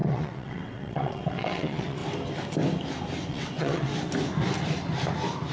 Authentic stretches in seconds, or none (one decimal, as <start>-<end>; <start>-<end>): 2.0-3.3; 3.9-5.5